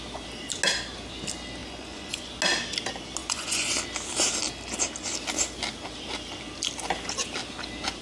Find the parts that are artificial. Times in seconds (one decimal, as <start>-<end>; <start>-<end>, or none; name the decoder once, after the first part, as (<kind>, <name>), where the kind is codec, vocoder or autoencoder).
1.6-2.3 (vocoder, Vocos); 3.2-3.7